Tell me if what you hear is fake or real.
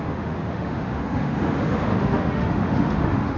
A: fake